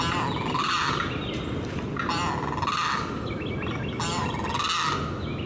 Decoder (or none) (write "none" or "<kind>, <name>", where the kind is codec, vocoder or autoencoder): none